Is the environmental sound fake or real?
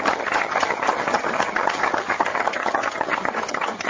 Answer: fake